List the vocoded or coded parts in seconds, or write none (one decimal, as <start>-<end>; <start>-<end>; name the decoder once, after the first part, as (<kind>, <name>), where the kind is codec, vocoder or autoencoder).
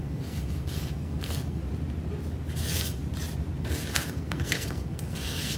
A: 0.0-1.6 (codec, SNAC); 2.6-3.0; 3.6-5.6